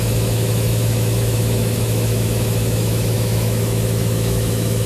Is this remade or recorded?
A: remade